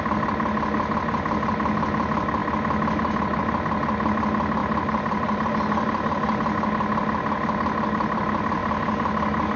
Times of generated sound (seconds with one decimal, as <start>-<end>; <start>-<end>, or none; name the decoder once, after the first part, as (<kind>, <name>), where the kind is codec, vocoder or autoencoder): 4.6-5.5 (vocoder, BigVGAN v2)